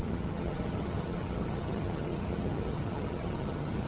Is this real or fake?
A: fake